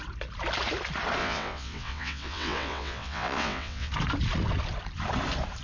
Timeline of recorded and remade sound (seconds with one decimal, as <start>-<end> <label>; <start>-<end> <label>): 0.0-1.2 recorded; 1.2-3.9 remade; 3.9-5.6 recorded